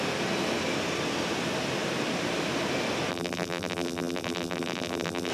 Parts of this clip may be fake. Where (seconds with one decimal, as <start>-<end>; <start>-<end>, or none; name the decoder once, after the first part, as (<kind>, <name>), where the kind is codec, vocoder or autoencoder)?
3.1-5.3 (vocoder, BigVGAN v2)